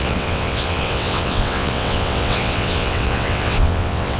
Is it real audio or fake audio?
fake